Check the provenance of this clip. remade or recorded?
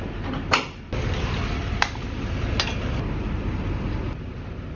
recorded